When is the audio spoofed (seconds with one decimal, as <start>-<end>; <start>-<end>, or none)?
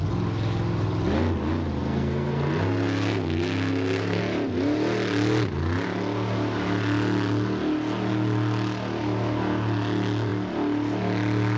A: 1.8-4.2